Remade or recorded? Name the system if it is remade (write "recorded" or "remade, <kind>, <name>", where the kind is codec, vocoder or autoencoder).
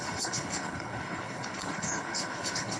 remade, codec, HILCodec